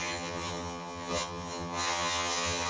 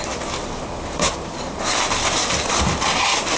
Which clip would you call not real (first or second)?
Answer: first